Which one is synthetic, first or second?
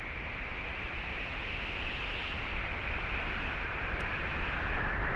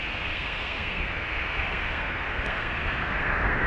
second